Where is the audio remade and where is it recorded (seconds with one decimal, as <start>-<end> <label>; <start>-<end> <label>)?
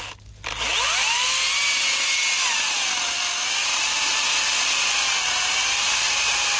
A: 0.0-6.6 recorded